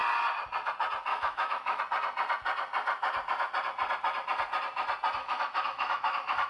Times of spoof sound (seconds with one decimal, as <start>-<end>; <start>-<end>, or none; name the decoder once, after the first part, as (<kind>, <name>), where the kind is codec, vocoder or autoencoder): 1.1-1.8 (autoencoder, DAC-VAE); 5.2-6.5